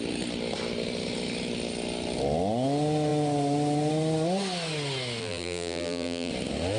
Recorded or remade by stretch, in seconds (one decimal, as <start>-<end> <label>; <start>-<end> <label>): 0.0-5.2 recorded; 5.2-6.3 remade; 6.3-6.8 recorded